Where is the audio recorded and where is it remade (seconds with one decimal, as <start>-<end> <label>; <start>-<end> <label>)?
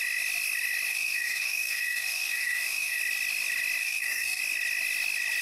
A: 0.0-0.9 recorded; 0.9-3.0 remade; 3.0-3.8 recorded; 3.8-4.4 remade; 4.4-5.4 recorded